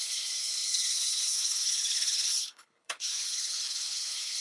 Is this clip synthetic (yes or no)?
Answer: yes